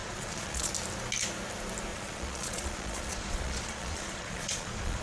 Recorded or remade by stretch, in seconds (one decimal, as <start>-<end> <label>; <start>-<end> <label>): 0.0-0.7 remade; 0.7-1.9 recorded; 1.9-5.0 remade